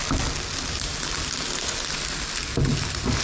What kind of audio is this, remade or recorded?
recorded